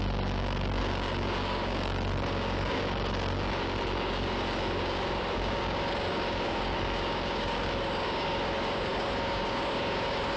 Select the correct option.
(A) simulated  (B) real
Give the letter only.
A